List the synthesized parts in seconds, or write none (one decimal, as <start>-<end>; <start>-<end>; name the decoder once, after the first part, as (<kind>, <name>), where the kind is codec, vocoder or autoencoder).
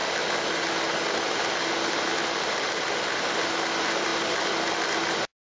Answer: none